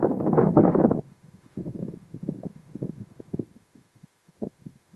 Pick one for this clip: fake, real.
fake